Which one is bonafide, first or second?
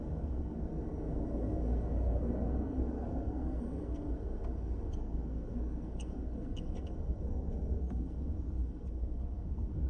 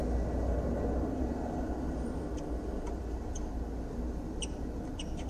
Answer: second